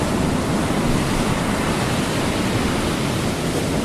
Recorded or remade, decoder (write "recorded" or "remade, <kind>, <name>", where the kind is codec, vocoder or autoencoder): recorded